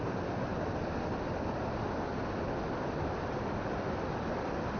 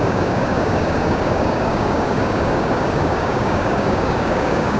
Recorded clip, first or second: first